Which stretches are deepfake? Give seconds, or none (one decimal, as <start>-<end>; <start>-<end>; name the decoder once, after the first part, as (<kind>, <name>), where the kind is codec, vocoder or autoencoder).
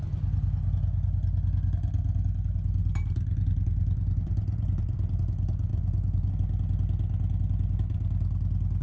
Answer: 2.8-5.2 (vocoder, BigVGAN v2); 5.7-6.3